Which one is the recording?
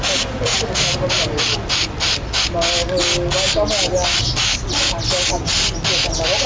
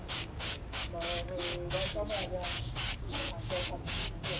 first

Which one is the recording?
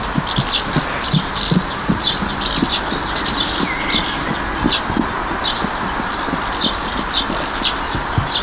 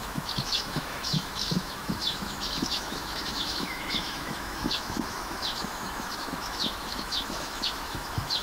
first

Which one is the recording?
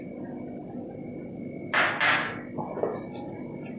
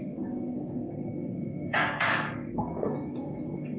first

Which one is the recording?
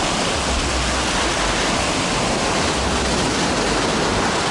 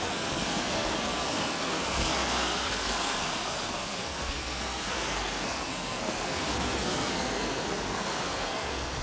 first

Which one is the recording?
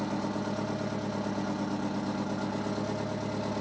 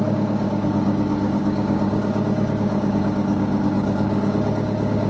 first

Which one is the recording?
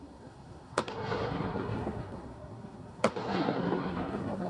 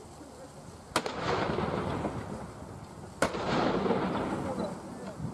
second